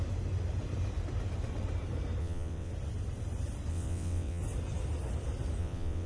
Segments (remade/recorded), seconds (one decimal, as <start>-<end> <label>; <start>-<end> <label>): 0.0-2.2 recorded; 2.2-2.7 remade; 2.7-3.7 recorded; 3.7-4.4 remade; 4.4-5.6 recorded; 5.6-6.1 remade